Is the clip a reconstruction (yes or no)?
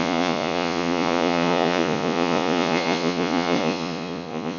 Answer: yes